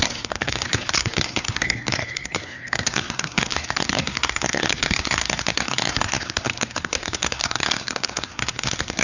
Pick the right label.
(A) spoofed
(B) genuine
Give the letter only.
A